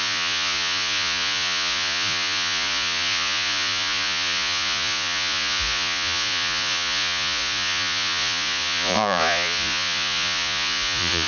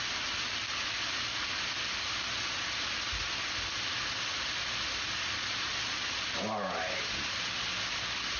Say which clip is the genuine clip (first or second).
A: second